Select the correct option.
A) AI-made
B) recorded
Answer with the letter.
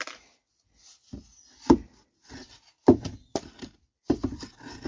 B